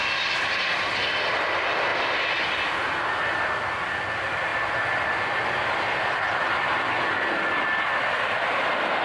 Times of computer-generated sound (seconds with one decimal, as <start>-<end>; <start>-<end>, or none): none